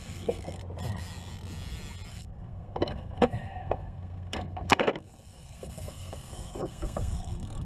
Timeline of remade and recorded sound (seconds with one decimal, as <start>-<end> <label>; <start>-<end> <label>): 0.0-0.6 remade; 0.6-2.1 recorded; 2.1-7.7 remade